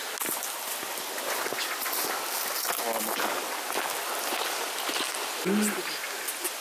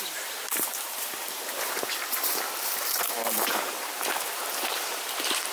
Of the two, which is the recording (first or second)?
first